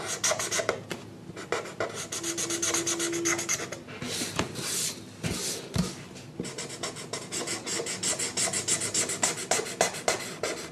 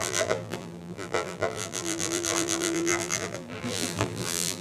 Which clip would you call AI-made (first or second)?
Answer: second